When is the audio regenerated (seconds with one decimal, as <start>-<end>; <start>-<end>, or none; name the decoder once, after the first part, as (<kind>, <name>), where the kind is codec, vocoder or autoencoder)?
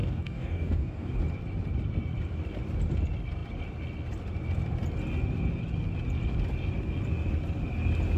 0.0-1.2 (codec, DAC)